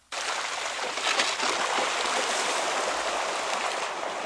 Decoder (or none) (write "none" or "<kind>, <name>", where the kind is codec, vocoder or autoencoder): none